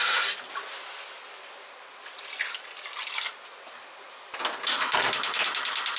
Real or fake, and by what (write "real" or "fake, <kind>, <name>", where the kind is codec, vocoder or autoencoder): real